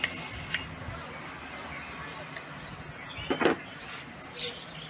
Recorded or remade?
recorded